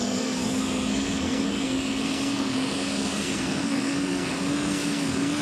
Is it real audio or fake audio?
fake